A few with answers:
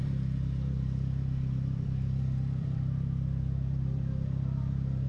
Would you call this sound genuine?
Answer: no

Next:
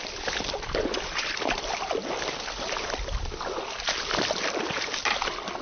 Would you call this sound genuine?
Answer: yes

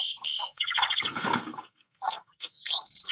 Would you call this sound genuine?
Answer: no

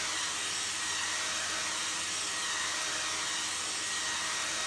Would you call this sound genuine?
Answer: yes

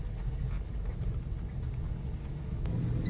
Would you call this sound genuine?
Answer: yes